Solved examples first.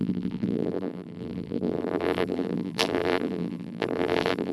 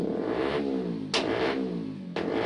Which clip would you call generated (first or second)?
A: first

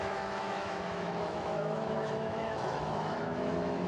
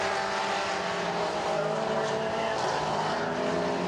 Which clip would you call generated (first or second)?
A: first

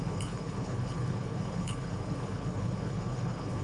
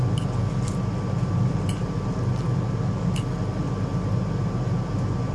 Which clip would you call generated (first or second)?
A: first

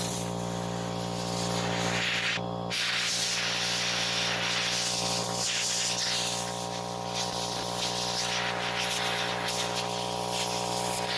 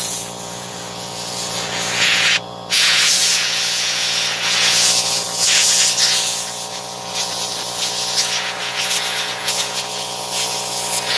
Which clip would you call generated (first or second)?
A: second